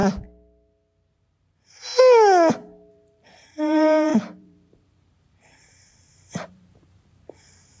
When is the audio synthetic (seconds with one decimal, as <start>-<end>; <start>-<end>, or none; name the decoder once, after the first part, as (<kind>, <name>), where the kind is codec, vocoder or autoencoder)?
1.1-1.9 (vocoder, BigVGAN v2); 2.9-7.8